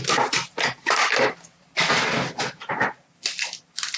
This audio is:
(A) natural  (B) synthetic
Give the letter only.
A